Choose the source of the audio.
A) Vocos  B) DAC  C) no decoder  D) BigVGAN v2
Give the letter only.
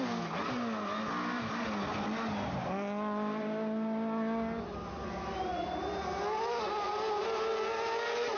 C